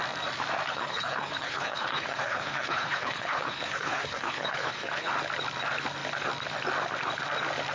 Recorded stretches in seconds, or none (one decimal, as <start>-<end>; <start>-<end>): 0.0-0.7; 5.1-7.7